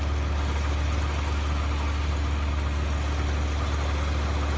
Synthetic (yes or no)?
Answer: no